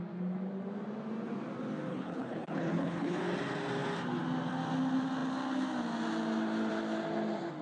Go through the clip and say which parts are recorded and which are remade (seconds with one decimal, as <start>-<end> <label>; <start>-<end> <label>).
0.0-1.9 recorded; 1.9-3.2 remade; 3.2-7.6 recorded